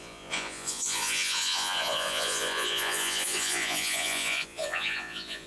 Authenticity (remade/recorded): remade